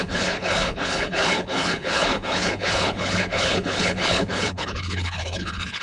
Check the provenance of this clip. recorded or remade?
remade